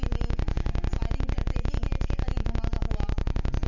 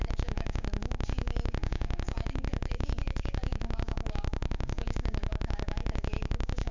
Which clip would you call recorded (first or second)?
first